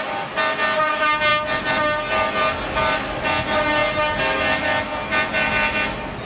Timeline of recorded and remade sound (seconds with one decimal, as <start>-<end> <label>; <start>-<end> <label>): 0.0-6.3 recorded